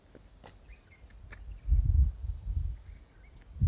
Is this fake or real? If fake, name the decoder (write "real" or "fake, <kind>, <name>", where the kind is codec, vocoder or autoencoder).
real